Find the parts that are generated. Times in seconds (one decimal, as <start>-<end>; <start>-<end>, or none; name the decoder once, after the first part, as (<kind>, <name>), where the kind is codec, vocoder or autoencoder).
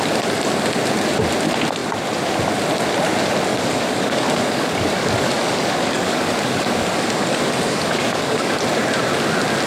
3.5-8.6 (codec, DAC)